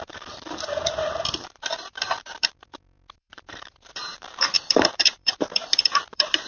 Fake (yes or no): yes